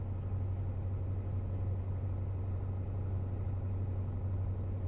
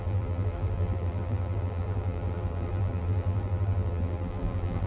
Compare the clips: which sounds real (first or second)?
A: first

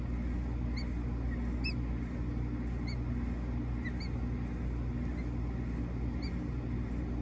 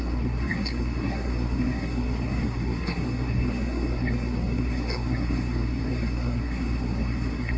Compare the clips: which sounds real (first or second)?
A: first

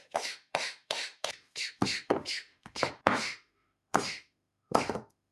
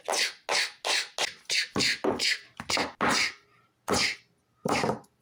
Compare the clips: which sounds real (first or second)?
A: second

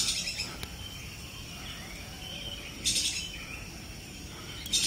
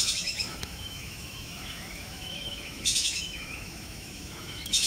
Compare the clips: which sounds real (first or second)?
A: first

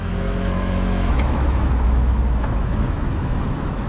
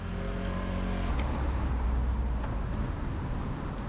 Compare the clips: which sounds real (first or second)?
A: second